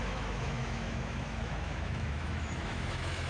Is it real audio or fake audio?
fake